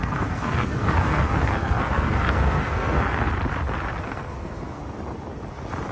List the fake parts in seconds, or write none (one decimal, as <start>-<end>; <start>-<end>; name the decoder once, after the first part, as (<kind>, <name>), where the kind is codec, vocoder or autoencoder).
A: 0.0-3.3 (codec, SNAC); 4.0-4.8